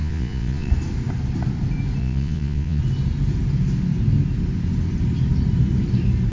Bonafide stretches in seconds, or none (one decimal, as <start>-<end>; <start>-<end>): 0.7-2.0; 2.8-6.3